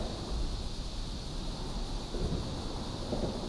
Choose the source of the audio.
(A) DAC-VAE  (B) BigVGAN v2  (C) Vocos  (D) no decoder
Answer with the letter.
D